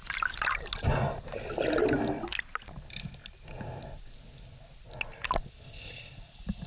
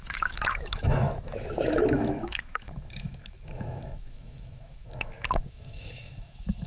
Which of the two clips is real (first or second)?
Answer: first